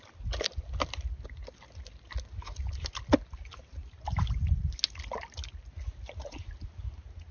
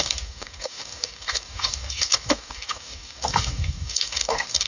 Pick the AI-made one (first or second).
second